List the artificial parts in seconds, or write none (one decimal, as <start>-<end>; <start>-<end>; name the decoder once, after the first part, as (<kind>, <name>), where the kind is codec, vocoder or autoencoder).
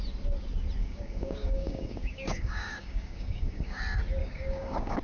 0.8-3.8 (codec, DAC); 4.2-5.0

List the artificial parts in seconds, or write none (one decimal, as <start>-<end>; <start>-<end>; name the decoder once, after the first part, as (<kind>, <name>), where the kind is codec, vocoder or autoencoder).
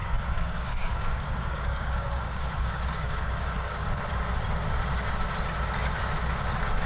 0.0-4.1 (codec, DAC)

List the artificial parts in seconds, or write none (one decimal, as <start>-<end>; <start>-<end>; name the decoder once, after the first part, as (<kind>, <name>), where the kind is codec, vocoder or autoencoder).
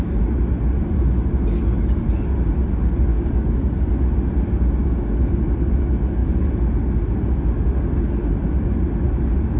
3.1-3.9 (codec, DAC); 4.8-5.4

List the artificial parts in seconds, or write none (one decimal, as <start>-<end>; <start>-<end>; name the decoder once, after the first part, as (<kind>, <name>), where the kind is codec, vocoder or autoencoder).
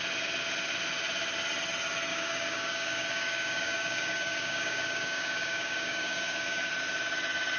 2.1-6.7 (codec, DAC)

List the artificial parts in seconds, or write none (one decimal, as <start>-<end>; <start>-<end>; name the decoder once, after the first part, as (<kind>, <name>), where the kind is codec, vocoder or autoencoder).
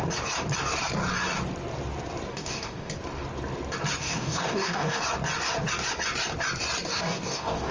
2.3-2.9 (codec, DAC); 4.0-5.0; 6.9-7.7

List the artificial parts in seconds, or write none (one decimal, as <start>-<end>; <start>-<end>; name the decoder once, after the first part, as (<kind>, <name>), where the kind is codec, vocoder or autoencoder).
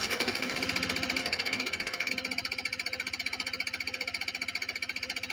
0.0-0.6 (codec, DAC); 1.2-2.1